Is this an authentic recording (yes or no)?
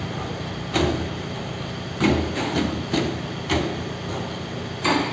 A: yes